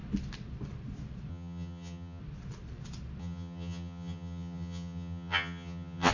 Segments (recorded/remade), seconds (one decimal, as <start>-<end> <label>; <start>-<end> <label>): 0.0-1.3 recorded; 1.3-2.2 remade; 2.2-3.2 recorded; 3.2-6.1 remade